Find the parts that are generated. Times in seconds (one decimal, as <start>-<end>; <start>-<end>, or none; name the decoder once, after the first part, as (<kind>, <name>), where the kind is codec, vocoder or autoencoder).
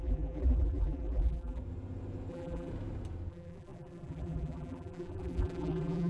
0.0-1.6 (vocoder, BigVGAN v2); 2.3-2.7; 3.3-6.1